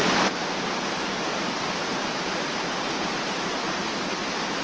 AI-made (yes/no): yes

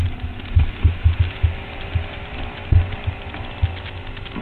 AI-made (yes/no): no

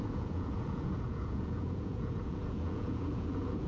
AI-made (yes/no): yes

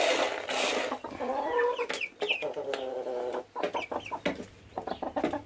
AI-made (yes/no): no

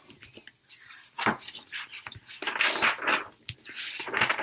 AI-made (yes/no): no